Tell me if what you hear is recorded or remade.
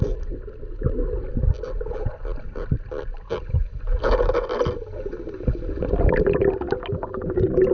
recorded